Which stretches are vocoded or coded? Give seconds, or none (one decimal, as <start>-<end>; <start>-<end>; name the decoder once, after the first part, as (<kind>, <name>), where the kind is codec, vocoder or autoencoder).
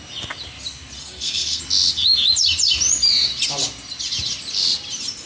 1.0-1.6 (codec, SNAC)